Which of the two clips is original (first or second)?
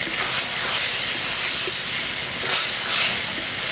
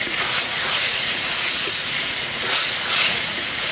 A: first